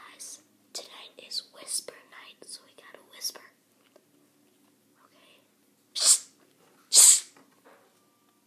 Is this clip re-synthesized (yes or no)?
no